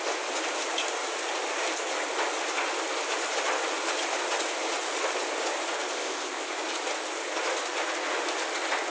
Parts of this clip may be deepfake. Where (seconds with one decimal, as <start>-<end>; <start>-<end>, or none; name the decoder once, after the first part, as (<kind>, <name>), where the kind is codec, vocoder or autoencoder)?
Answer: 5.9-6.5 (codec, ZipCodec)